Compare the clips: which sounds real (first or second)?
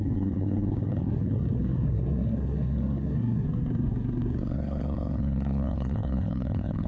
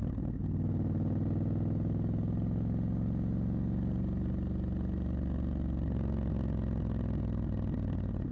second